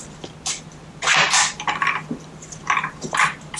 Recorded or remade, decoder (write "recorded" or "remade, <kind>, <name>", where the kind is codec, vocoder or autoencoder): recorded